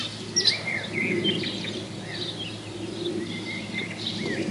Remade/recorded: recorded